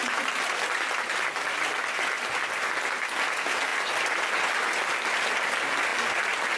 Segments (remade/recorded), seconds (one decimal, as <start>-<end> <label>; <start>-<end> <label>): 0.0-6.6 recorded

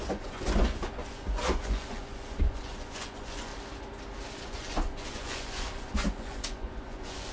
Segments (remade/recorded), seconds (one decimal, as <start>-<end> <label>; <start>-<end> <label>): 0.0-3.5 remade; 3.5-4.4 recorded; 4.4-7.3 remade